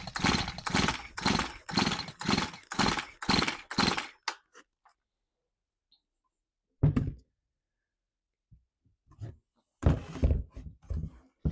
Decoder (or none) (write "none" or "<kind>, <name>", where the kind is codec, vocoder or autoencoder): none